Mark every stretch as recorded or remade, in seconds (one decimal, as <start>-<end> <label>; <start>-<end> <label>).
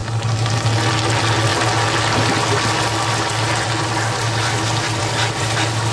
0.0-5.9 recorded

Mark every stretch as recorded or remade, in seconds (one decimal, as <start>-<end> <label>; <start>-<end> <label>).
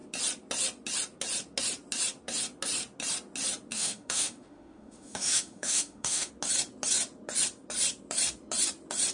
0.0-3.7 recorded; 3.7-6.3 remade; 6.3-9.1 recorded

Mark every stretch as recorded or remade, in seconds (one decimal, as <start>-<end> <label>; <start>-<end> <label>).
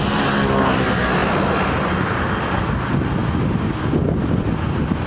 0.0-5.1 recorded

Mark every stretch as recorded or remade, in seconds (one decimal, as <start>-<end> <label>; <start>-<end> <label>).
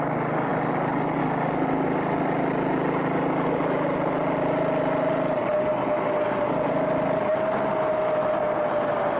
0.0-9.2 recorded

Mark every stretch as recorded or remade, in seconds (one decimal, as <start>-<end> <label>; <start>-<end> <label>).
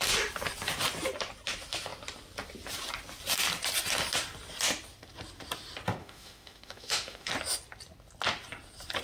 0.0-6.0 recorded; 6.0-7.3 remade; 7.3-9.0 recorded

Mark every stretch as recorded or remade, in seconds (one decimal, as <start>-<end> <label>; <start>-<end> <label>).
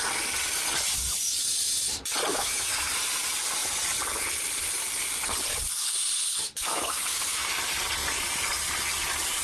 0.0-2.3 recorded; 2.3-2.9 remade; 2.9-6.3 recorded; 6.3-7.5 remade; 7.5-9.4 recorded